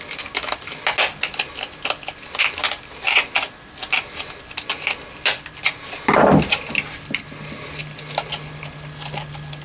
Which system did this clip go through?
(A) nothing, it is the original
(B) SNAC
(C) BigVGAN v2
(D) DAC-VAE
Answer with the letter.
A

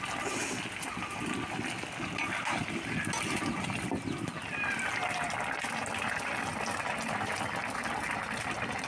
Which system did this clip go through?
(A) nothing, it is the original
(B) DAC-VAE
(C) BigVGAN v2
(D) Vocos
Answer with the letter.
A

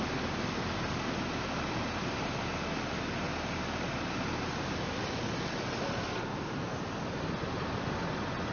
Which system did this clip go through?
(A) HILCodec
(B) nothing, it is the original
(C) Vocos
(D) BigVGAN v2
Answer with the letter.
B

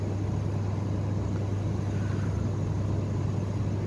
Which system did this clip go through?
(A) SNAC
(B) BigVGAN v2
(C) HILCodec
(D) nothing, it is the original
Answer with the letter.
D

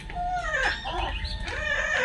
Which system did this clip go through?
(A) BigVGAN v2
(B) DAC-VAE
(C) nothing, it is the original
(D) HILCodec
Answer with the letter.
C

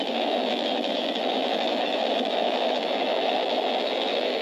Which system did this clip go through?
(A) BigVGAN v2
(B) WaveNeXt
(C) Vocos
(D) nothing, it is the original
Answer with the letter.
A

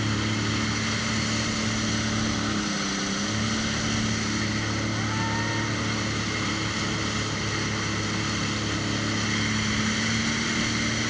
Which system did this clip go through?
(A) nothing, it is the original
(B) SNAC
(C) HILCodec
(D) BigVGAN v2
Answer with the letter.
A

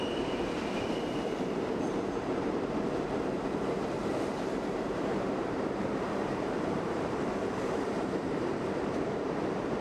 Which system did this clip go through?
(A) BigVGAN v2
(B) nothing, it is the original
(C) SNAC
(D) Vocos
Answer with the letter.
A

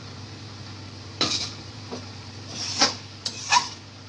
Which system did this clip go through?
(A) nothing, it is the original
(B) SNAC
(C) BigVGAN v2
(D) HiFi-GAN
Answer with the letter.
C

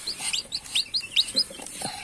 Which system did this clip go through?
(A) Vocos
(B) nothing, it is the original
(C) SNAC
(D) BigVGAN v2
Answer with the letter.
D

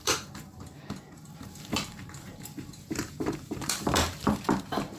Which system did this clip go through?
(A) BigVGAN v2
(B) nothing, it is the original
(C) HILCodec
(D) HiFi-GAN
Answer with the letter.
A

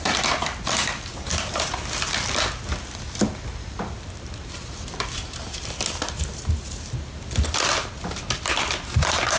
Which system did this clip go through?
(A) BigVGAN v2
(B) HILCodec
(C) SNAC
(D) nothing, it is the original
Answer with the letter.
D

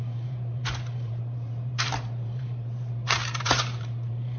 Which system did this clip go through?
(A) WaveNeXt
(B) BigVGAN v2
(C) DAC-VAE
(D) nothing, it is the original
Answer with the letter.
B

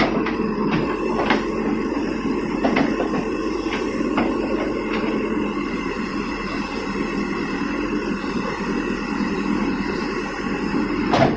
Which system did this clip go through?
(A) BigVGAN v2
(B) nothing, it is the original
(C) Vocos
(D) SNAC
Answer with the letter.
A